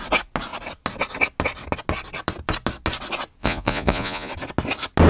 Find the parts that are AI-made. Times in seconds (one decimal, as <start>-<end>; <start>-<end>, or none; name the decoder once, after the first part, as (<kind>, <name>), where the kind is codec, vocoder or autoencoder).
3.4-4.3 (vocoder, Vocos)